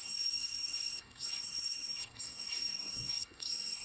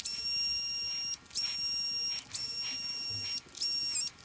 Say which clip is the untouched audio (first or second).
second